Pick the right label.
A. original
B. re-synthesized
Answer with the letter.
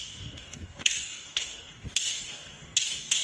B